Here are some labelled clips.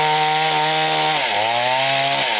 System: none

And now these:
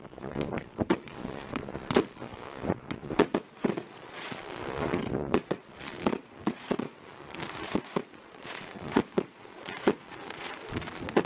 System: vocoder, Vocos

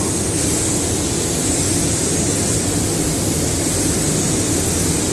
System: none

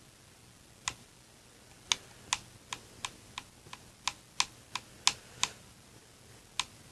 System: none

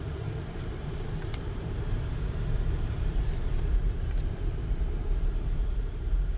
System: vocoder, BigVGAN v2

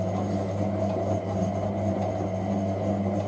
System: none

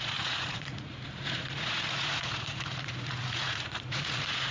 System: vocoder, Vocos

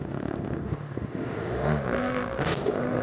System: autoencoder, DAC-VAE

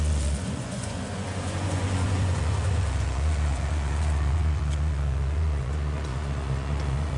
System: vocoder, Vocos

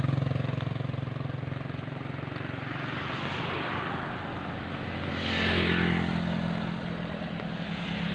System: none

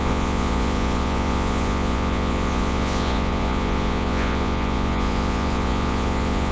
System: vocoder, Vocos